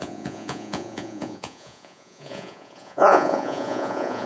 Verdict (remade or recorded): remade